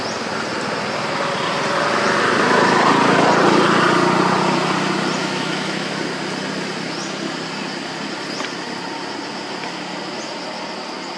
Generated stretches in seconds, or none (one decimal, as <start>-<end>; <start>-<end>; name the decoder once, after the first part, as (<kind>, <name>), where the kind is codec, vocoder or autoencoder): 5.2-5.9 (autoencoder, DAC-VAE)